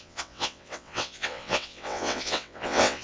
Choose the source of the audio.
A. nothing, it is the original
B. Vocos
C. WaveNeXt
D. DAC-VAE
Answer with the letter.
C